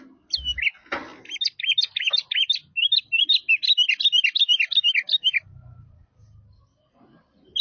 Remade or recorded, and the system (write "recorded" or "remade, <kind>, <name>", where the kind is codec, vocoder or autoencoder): recorded